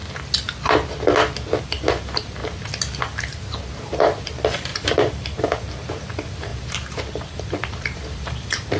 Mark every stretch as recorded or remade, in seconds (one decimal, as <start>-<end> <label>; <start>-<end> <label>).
0.0-1.6 recorded; 1.6-2.4 remade; 2.4-3.0 recorded; 3.0-8.8 remade